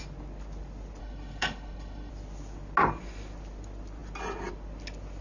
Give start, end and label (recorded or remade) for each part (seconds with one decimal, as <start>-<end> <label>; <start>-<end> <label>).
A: 0.0-1.0 recorded; 1.0-2.1 remade; 2.1-5.2 recorded